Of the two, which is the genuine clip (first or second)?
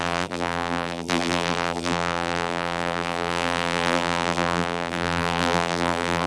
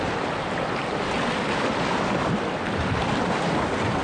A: second